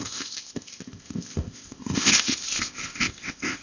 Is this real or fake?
fake